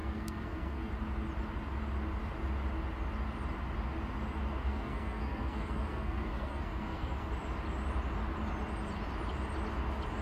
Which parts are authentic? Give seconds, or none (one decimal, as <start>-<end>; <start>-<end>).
0.9-4.6; 7.3-10.2

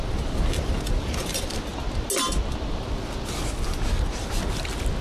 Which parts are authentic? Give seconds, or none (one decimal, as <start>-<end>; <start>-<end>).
1.7-5.0